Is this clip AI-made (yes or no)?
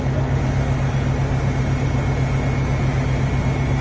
no